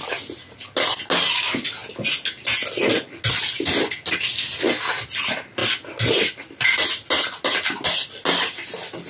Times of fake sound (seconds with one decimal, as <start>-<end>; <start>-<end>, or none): none